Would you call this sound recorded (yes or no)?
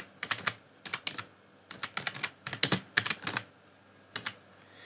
yes